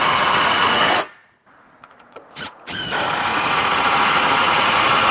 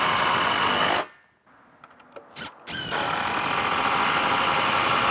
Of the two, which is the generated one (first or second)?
first